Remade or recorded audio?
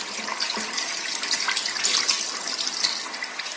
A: recorded